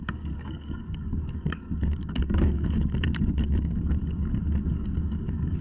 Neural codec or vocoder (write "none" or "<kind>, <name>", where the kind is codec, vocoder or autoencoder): codec, DAC